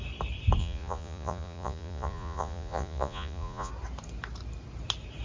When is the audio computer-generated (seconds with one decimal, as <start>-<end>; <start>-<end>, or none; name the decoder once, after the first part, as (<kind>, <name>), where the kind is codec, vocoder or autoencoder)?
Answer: 0.6-3.7 (vocoder, Vocos)